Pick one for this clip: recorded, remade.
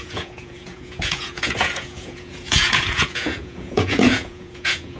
remade